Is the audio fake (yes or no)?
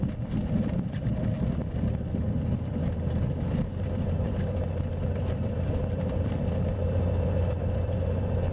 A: yes